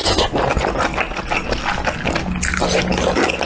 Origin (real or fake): real